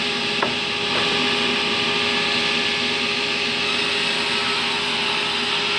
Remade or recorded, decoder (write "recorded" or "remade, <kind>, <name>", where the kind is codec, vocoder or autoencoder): recorded